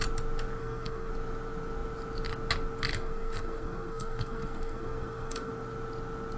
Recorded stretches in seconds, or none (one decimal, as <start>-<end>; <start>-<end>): 0.0-0.6; 1.1-2.9; 5.5-6.4